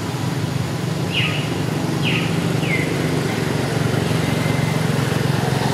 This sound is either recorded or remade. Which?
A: recorded